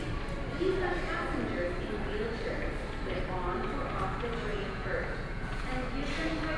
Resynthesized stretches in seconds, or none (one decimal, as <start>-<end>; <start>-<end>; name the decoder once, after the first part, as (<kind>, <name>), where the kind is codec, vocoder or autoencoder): 4.5-5.6 (vocoder, Vocos)